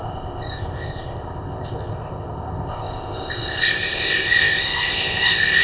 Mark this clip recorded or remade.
remade